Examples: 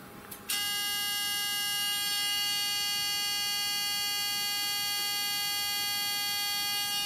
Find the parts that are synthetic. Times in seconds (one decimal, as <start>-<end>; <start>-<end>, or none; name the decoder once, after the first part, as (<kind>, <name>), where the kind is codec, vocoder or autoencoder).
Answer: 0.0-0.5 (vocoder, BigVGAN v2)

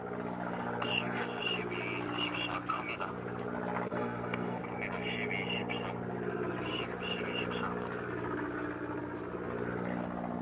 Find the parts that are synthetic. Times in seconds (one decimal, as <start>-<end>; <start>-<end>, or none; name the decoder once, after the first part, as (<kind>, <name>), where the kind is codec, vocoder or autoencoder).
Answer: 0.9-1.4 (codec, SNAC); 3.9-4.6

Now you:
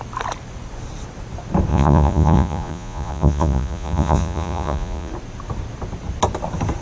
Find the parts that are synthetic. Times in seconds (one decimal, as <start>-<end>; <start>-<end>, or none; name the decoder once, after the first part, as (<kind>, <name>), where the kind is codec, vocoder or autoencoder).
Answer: 1.7-5.1 (vocoder, Vocos)

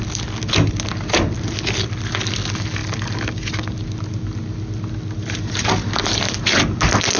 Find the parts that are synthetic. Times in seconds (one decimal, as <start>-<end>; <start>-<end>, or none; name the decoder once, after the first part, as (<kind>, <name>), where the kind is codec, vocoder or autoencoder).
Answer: none

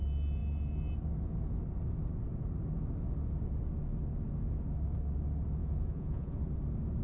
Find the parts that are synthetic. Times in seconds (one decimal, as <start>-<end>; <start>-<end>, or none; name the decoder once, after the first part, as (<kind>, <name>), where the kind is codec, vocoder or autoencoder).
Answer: 5.6-6.4 (vocoder, Vocos)

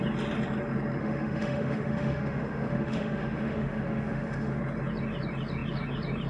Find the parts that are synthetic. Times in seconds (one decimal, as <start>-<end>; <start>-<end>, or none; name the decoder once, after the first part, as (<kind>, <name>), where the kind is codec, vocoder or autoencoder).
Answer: 1.0-4.6 (autoencoder, DAC-VAE)